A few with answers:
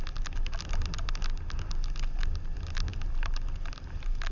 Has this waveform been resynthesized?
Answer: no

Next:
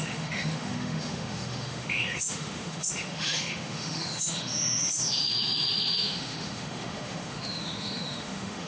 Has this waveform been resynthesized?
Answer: yes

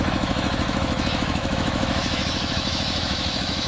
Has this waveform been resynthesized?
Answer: yes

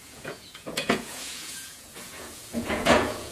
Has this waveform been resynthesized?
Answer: yes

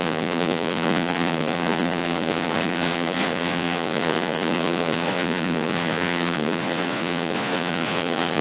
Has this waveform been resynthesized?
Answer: yes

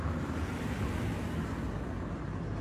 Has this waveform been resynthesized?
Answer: no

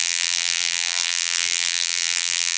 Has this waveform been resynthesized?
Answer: yes